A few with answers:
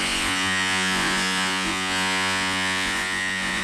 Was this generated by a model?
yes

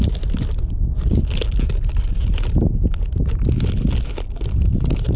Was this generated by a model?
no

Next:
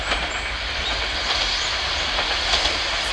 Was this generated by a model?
no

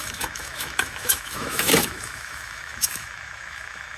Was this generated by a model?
yes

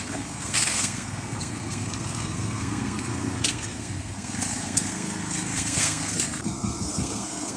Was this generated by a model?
yes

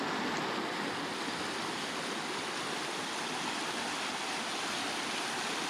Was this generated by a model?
no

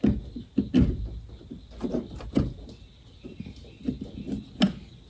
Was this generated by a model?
no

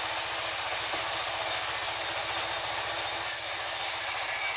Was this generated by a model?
no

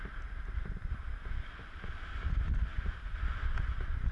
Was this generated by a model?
no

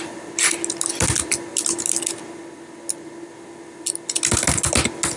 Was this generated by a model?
no